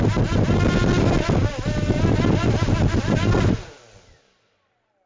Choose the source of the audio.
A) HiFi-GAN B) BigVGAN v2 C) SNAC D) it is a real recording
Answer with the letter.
D